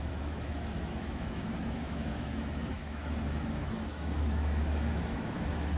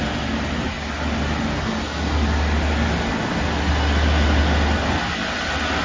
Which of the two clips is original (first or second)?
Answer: second